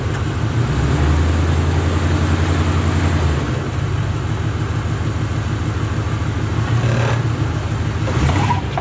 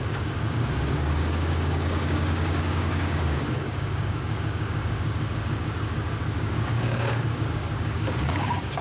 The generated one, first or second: second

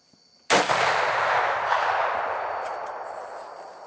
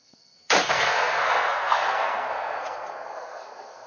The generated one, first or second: second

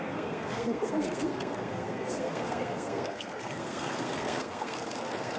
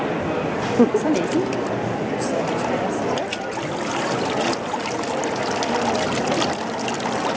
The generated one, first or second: first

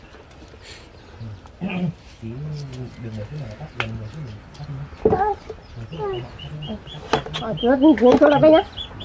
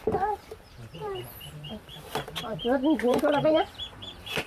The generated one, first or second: second